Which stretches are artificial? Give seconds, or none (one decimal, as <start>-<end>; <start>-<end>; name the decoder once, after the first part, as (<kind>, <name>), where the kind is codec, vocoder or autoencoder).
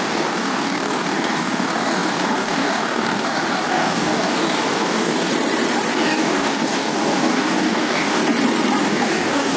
0.0-5.3 (codec, DAC); 5.9-8.2; 8.8-9.6